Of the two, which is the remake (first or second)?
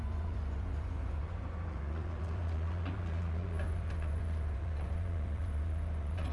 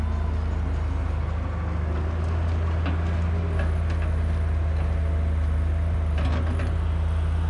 first